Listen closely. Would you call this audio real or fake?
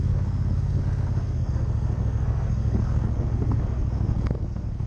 fake